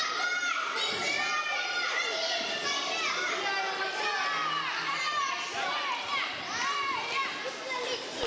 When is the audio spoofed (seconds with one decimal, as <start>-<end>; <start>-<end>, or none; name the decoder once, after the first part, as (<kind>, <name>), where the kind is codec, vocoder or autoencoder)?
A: none

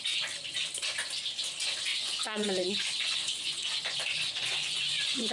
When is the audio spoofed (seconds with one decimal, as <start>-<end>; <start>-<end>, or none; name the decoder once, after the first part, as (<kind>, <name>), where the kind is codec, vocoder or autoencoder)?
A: 1.9-5.3 (vocoder, Vocos)

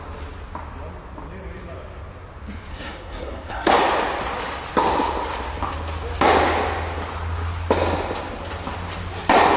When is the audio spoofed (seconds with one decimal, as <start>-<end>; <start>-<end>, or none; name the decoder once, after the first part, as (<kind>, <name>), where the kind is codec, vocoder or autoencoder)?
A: 2.7-3.7 (codec, SNAC)

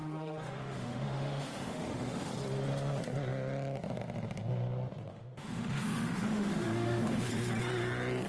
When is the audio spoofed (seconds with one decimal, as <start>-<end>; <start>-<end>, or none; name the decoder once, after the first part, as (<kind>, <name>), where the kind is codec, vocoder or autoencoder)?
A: 0.0-2.3 (autoencoder, DAC-VAE); 5.1-7.3

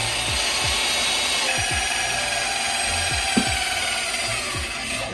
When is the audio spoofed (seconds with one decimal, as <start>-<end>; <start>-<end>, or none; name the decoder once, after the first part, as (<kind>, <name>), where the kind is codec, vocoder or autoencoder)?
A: 4.3-5.1 (vocoder, Vocos)